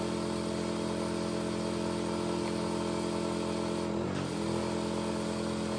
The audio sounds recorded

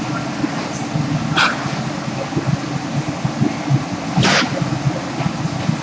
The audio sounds recorded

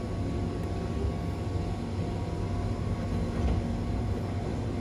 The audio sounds recorded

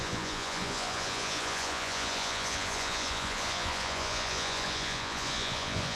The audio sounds remade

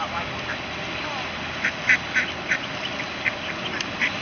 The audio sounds recorded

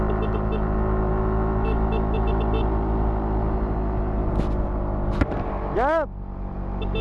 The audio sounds recorded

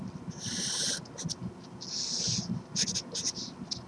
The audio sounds recorded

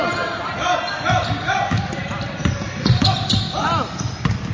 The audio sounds recorded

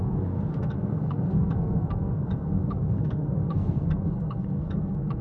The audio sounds remade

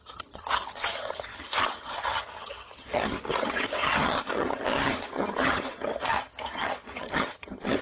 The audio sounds remade